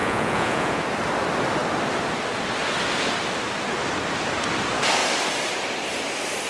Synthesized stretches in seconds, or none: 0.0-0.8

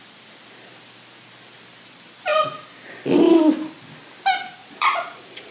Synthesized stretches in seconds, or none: 4.6-5.5

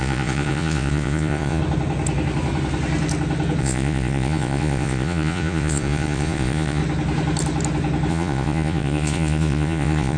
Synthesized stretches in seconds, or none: 0.0-1.6; 3.6-6.8; 8.1-10.2

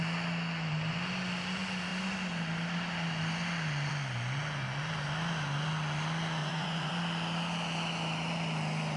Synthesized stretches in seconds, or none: 6.4-6.9

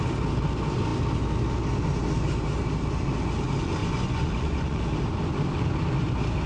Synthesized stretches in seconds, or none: 3.8-4.8

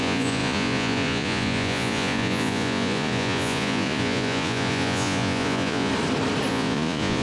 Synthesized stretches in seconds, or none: 0.0-5.9; 6.5-7.2